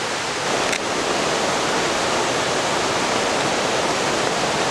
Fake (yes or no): no